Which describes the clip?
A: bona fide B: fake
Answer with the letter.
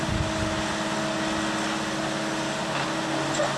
A